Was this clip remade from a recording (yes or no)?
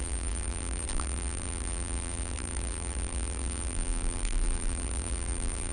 yes